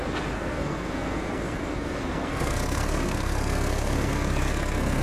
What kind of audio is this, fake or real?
fake